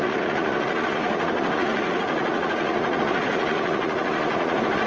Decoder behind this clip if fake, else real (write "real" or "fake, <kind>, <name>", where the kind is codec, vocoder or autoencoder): fake, vocoder, Vocos